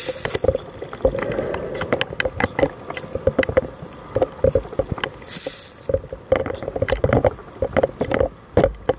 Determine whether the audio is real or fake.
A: real